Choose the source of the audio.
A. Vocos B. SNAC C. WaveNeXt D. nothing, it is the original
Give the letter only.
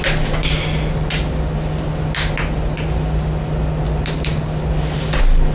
D